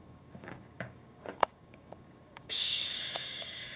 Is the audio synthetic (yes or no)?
yes